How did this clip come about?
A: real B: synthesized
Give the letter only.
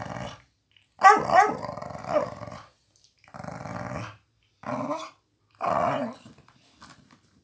A